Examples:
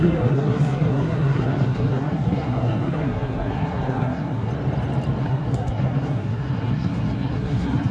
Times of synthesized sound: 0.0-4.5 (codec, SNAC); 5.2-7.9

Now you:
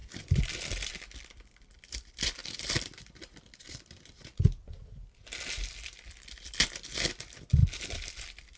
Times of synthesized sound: 0.0-0.9 (vocoder, BigVGAN v2); 2.4-6.1; 7.6-8.6

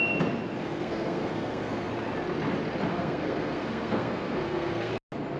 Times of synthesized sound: 0.6-1.9 (codec, SNAC); 2.9-4.9

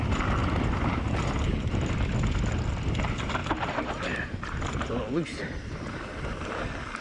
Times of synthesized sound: 0.4-1.0 (vocoder, BigVGAN v2); 3.4-6.5

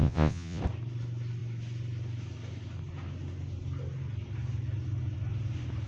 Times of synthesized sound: 0.0-0.6 (vocoder, Vocos)